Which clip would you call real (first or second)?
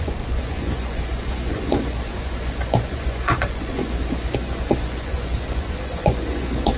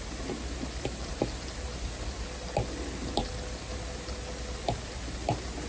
second